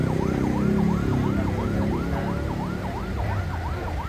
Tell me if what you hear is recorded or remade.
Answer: recorded